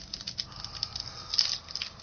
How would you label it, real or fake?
real